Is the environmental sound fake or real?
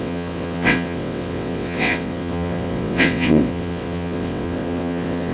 fake